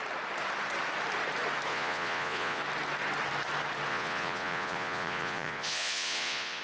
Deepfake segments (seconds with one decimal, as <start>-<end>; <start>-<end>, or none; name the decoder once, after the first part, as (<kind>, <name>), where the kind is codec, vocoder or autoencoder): 1.7-2.6 (vocoder, Vocos); 3.9-6.6

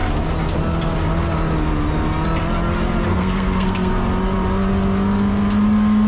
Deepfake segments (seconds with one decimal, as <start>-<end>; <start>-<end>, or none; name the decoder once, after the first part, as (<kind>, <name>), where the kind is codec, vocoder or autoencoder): 3.1-3.9 (codec, SNAC)

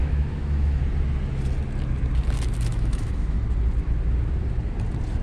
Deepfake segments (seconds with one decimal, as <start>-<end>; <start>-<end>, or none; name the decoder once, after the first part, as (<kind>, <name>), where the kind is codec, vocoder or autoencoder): 0.0-0.8 (autoencoder, DAC-VAE); 2.7-3.4